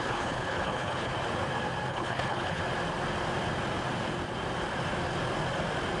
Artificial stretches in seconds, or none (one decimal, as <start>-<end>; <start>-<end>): 0.0-1.1; 1.9-2.6